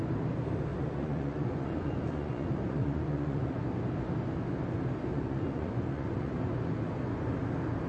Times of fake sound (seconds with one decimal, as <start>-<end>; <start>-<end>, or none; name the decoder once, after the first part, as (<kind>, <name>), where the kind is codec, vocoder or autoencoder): 0.7-3.6 (vocoder, Vocos); 5.1-6.3